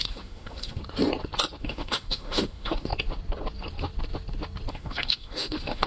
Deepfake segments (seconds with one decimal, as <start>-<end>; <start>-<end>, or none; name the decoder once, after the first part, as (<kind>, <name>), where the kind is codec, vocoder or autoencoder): 0.0-0.8 (autoencoder, DAC-VAE); 1.6-2.9; 4.7-5.9